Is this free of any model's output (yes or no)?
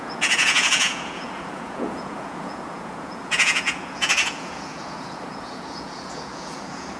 no